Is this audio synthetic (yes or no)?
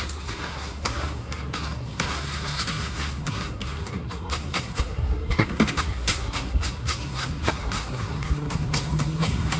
yes